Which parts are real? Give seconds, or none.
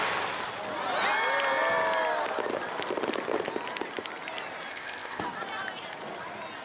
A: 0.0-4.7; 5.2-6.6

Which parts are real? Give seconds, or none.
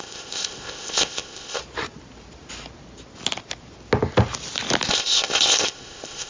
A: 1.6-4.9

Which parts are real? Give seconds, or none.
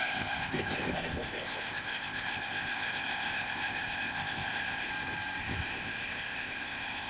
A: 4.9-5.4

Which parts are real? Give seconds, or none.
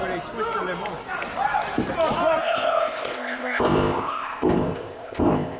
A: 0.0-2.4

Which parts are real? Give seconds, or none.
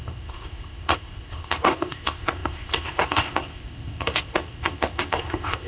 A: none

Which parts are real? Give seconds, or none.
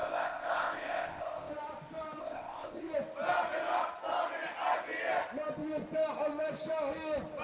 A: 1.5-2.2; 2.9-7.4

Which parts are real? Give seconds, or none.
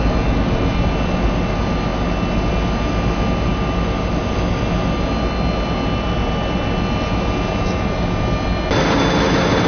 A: 0.0-9.7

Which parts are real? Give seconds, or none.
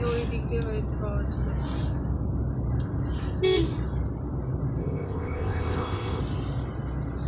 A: 0.0-4.8; 6.2-7.3